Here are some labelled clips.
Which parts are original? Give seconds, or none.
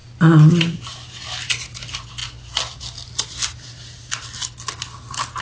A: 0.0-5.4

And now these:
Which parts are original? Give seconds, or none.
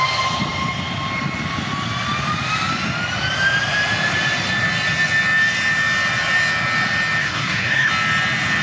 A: 0.0-7.2; 7.9-8.6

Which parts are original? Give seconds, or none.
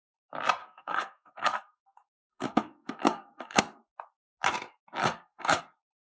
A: 0.0-0.6; 3.6-5.0; 5.6-6.2